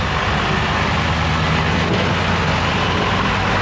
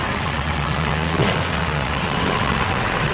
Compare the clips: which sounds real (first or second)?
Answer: first